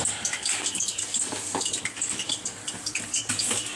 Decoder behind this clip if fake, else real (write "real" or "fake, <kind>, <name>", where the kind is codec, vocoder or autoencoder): fake, codec, DAC